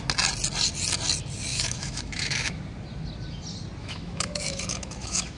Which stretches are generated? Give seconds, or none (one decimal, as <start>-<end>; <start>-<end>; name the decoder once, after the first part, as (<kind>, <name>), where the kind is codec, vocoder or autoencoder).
1.5-2.6 (autoencoder, DAC-VAE); 3.8-5.4